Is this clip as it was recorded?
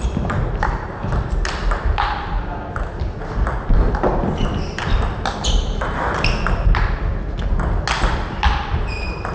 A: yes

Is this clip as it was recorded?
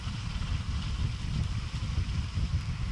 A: yes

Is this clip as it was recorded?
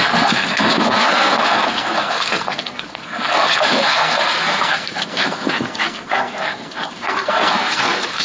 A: no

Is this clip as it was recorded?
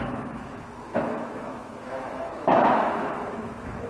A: no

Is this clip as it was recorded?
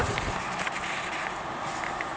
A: yes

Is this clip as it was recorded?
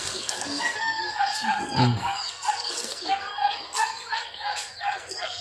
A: no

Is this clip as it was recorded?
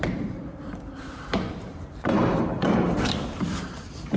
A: no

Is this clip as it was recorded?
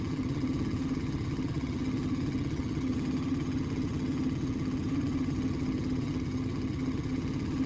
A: no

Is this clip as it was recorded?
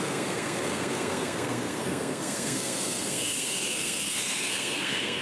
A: no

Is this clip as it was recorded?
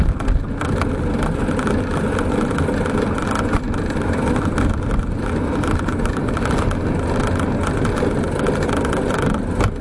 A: yes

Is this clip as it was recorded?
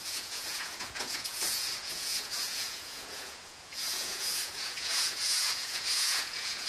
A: no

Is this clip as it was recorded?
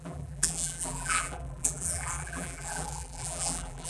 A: no